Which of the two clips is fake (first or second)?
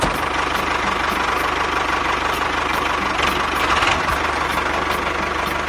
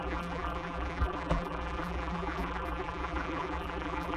second